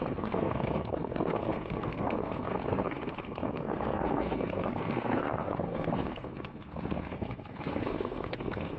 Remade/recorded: remade